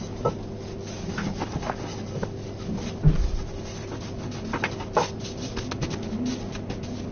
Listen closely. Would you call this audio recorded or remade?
recorded